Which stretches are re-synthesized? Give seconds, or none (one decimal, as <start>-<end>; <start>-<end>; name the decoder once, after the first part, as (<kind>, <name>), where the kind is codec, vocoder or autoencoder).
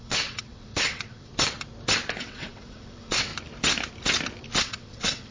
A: 0.0-1.3 (vocoder, WaveNeXt); 2.2-3.3; 4.6-5.3